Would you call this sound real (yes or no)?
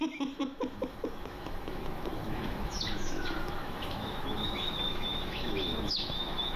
no